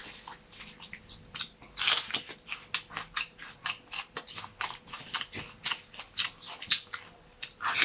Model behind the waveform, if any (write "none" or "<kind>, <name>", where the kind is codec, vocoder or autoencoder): none